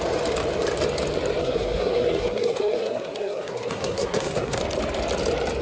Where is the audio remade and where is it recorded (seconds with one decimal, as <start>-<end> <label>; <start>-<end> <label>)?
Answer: 0.0-1.4 recorded; 1.4-4.6 remade; 4.6-5.6 recorded